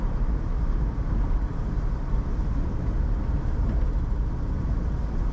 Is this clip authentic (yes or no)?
no